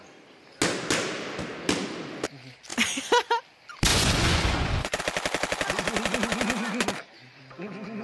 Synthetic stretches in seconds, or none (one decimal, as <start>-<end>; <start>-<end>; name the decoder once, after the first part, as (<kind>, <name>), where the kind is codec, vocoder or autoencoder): 3.9-5.0 (vocoder, Vocos)